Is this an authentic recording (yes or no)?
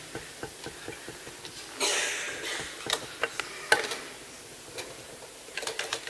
yes